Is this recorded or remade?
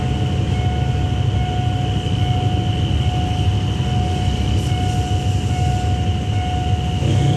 recorded